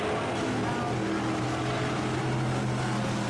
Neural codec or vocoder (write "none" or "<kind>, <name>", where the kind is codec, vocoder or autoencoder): none